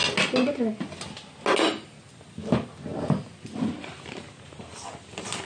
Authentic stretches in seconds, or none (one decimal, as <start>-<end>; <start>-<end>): 0.0-5.5